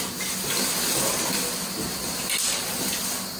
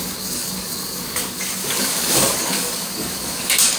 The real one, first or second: first